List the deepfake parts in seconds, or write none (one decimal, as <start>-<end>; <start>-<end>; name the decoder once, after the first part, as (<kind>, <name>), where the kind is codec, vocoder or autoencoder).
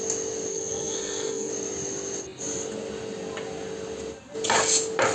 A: 0.5-1.5 (codec, SNAC)